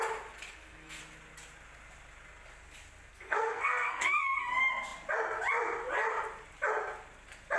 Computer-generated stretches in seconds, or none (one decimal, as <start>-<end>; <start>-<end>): 0.5-1.0; 3.1-4.4